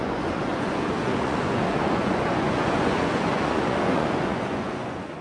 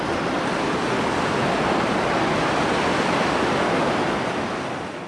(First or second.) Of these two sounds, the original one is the second